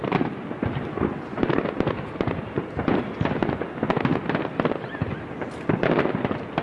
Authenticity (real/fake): real